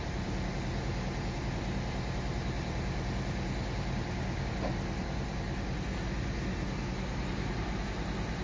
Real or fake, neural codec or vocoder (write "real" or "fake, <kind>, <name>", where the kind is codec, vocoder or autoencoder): fake, vocoder, BigVGAN v2